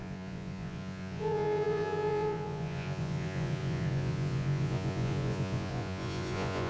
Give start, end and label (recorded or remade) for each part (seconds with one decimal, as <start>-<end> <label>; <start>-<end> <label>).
0.0-6.7 remade